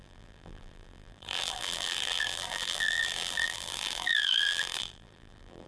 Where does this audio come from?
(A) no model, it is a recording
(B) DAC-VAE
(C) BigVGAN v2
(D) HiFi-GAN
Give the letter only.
C